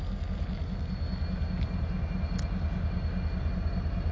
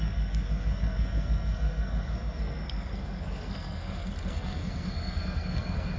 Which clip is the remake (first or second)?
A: second